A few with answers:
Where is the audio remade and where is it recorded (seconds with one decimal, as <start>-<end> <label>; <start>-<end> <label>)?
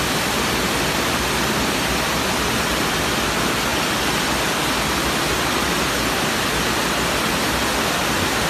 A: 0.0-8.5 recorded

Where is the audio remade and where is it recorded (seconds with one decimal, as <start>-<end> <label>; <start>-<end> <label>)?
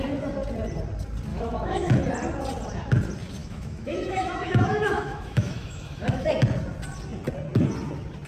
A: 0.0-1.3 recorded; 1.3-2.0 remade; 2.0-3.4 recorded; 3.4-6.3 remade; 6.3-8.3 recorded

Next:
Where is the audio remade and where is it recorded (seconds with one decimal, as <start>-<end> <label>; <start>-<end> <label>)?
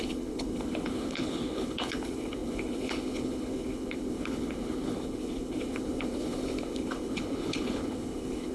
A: 0.0-8.5 remade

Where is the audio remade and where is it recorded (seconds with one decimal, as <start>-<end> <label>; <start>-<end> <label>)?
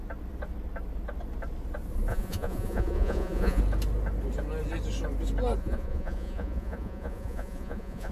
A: 0.0-2.1 recorded; 2.1-3.6 remade; 3.6-5.6 recorded; 5.6-8.1 remade